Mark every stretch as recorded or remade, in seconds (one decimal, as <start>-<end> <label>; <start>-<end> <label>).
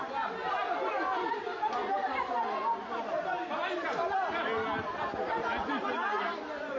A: 0.0-6.8 recorded